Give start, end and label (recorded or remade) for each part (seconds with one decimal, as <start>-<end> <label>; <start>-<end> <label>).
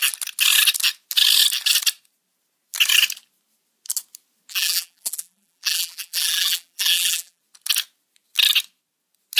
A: 0.0-4.5 recorded; 4.5-7.4 remade; 7.4-9.4 recorded